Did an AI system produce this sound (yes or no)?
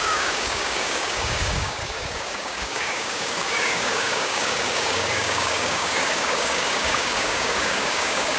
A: yes